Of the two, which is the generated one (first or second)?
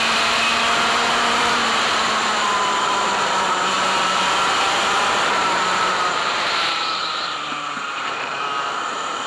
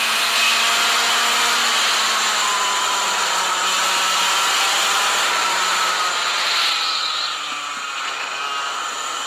first